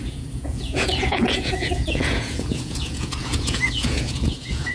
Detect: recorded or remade remade